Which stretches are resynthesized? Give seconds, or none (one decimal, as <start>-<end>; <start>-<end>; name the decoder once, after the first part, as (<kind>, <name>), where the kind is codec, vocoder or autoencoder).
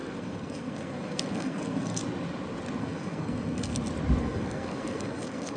0.0-2.0 (codec, SNAC); 2.8-3.7; 4.2-5.6